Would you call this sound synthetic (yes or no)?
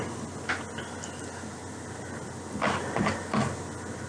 no